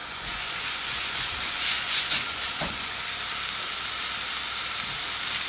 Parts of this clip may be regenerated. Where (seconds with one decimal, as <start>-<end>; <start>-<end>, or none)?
0.0-3.0